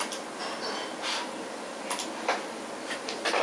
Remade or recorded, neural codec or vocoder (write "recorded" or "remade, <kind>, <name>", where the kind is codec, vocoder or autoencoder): recorded